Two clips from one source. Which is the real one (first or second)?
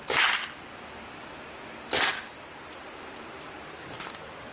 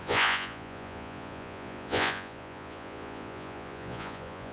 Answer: first